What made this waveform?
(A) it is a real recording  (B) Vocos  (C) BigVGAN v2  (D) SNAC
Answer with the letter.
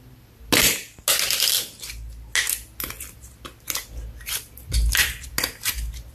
A